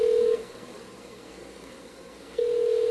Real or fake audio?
fake